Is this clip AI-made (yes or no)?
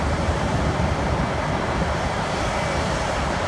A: yes